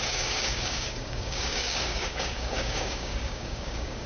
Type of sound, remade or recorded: remade